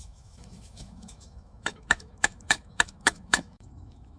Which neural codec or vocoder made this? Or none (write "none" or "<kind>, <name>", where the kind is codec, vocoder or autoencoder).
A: autoencoder, DAC-VAE